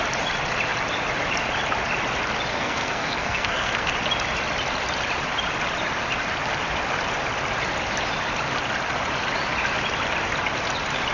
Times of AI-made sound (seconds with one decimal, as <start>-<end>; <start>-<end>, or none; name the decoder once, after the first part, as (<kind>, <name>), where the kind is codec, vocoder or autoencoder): 2.5-3.9 (codec, SNAC)